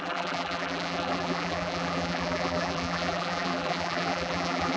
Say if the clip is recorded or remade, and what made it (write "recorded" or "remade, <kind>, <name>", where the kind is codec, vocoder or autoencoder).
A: remade, vocoder, BigVGAN v2